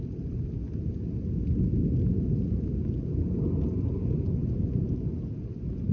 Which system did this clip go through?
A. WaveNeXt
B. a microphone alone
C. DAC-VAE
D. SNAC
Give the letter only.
B